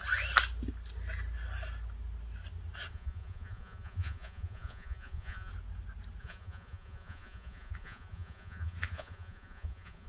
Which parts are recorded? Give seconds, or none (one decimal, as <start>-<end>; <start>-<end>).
0.0-2.9; 5.5-6.2